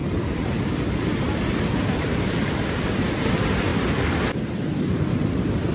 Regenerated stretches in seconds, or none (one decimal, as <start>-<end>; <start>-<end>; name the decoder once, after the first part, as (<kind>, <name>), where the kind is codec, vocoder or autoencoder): 0.0-0.6 (vocoder, BigVGAN v2)